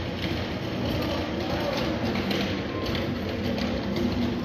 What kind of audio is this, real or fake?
real